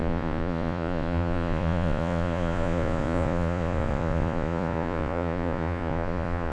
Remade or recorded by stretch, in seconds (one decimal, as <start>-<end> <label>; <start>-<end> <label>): 0.0-6.5 remade